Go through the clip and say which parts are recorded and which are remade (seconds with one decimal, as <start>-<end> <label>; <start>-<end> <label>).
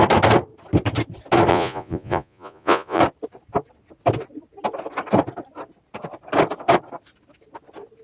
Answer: 0.0-1.5 recorded; 1.5-3.0 remade; 3.0-8.0 recorded